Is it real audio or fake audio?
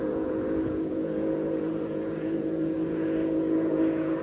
fake